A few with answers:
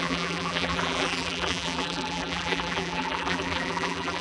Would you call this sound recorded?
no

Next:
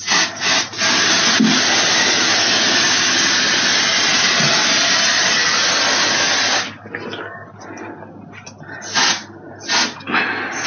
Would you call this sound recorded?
yes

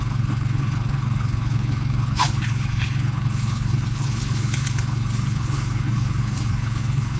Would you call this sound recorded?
no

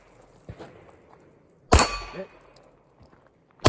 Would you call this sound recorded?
yes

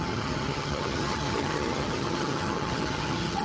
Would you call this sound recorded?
no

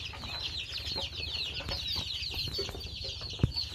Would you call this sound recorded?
yes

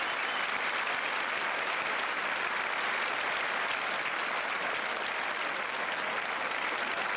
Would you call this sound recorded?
yes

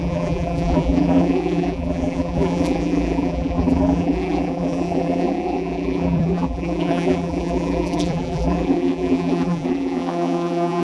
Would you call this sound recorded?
no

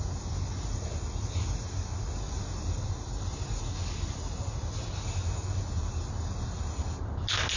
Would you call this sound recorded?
yes